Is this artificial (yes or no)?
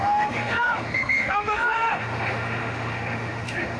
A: yes